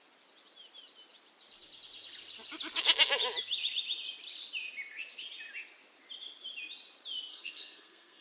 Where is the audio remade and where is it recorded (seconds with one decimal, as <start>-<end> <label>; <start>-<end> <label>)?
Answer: 0.0-7.3 recorded; 7.3-8.2 remade